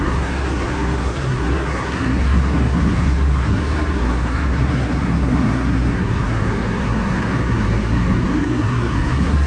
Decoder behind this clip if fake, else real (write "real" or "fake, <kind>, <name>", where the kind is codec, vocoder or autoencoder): fake, codec, SNAC